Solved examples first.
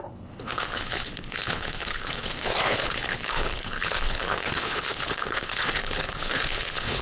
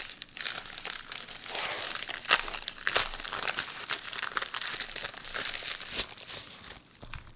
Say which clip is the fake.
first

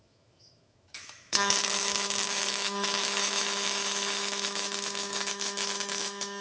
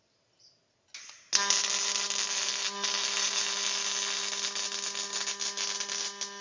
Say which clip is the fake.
first